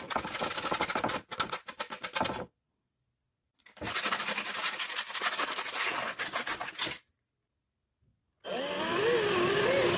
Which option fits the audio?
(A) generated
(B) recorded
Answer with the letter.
B